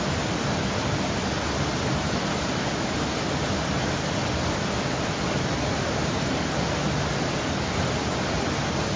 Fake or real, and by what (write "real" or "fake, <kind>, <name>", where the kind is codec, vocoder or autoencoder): real